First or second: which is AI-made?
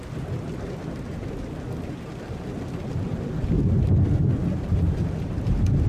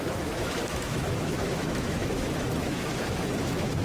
second